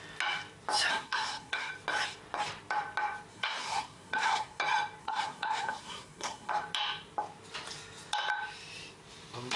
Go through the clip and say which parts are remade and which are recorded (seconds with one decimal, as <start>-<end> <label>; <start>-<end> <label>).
0.0-0.9 recorded; 0.9-1.7 remade; 1.7-3.3 recorded; 3.3-4.6 remade; 4.6-5.0 recorded; 5.0-6.5 remade; 6.5-9.6 recorded